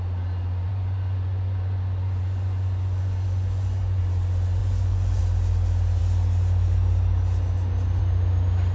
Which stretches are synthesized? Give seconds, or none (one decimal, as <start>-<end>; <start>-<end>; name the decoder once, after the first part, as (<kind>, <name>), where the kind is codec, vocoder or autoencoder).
0.7-4.0 (vocoder, Vocos); 4.6-5.2